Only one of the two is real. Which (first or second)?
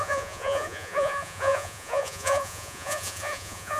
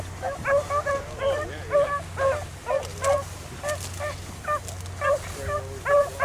second